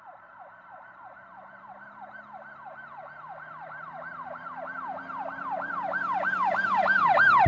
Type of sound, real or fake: fake